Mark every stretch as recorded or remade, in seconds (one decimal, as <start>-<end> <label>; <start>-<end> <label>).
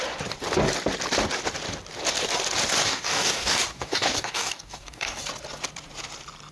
0.0-2.8 recorded; 2.8-5.2 remade; 5.2-6.5 recorded